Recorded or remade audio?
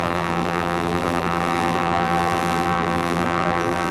remade